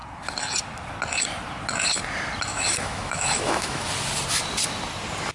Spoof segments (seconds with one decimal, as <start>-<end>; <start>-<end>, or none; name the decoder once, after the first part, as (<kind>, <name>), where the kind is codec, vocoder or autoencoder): 2.5-3.9 (autoencoder, DAC-VAE)